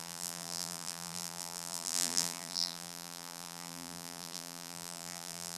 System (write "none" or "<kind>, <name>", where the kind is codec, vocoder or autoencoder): vocoder, BigVGAN v2